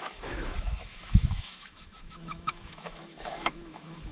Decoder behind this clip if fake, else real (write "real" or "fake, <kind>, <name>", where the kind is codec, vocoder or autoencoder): fake, autoencoder, DAC-VAE